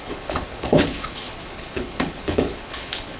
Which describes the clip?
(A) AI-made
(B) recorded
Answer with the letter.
A